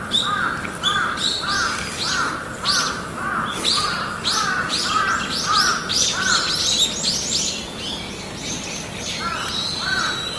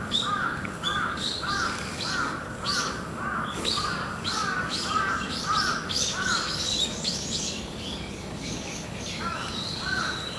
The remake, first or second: second